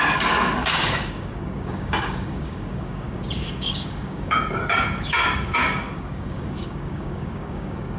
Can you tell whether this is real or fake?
fake